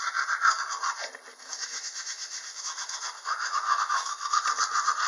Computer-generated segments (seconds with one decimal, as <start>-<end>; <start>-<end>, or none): 1.3-4.4